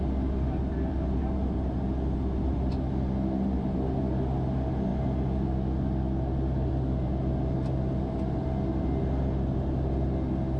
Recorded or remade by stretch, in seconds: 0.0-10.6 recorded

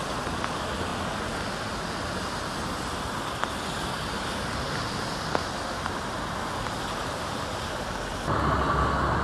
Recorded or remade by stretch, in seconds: 0.0-9.2 recorded

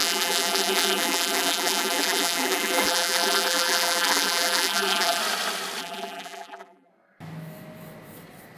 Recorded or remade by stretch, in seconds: 0.0-5.2 remade; 5.2-5.8 recorded; 5.8-6.9 remade; 6.9-8.6 recorded